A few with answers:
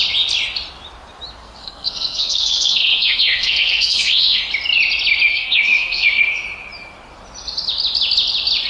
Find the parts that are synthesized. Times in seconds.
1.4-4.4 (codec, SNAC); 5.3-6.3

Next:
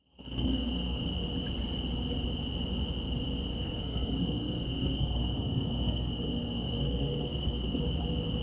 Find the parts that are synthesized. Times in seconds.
0.0-1.0 (codec, SNAC); 3.5-7.8

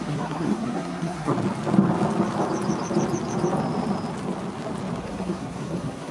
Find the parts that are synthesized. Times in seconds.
0.0-1.3 (codec, SNAC); 5.0-6.1

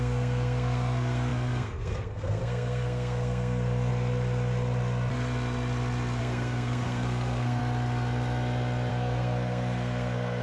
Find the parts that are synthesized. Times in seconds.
0.0-3.9 (codec, SNAC); 6.2-7.6; 8.9-10.4

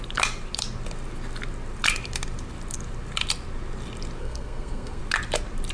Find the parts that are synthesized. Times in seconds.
4.2-5.0 (codec, SNAC)